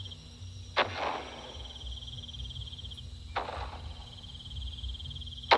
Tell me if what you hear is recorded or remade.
recorded